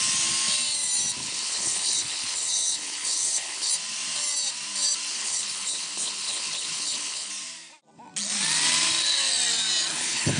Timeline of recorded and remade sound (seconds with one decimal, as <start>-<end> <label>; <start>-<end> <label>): 0.0-1.2 recorded; 1.2-3.7 remade; 3.7-5.1 recorded; 5.1-7.3 remade; 7.3-9.9 recorded; 9.9-10.4 remade